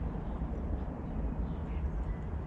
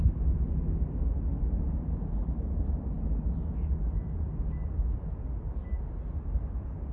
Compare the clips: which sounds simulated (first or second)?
first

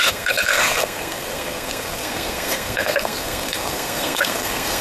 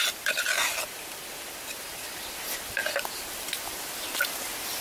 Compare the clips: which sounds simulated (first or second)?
first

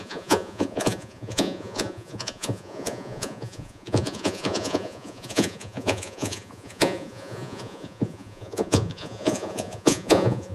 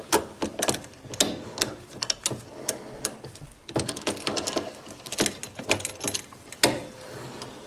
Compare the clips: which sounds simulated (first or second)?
first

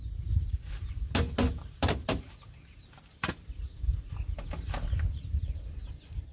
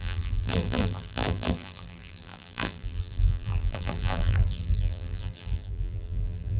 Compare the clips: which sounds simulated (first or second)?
second